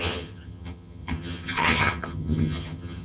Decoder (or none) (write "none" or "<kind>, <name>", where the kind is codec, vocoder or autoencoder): vocoder, HiFi-GAN